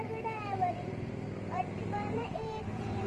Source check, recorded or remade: remade